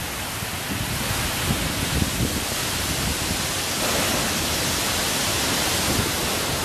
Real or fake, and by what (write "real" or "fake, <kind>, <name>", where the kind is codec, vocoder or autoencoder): real